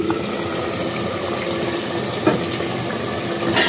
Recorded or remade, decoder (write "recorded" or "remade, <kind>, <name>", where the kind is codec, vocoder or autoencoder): recorded